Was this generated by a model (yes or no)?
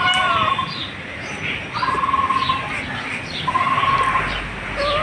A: no